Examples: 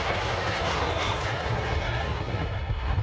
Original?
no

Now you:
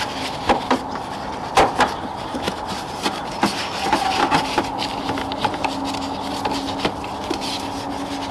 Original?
yes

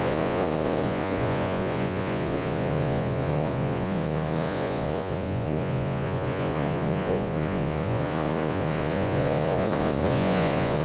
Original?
no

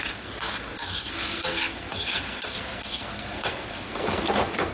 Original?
no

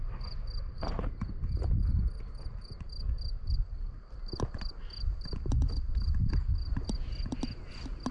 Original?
yes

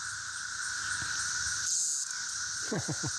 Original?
yes